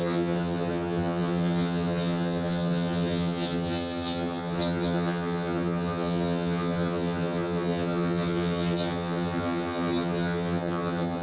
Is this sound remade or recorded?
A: remade